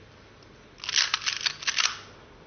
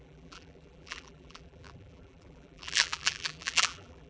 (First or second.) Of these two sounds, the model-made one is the second